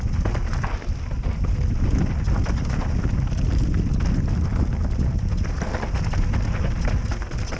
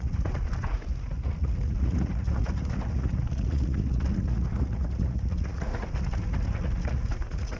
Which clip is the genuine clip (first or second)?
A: first